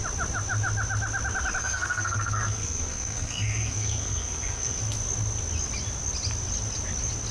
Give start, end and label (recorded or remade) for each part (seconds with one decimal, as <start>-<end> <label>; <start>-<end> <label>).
0.0-1.6 recorded; 1.6-4.8 remade; 4.8-7.3 recorded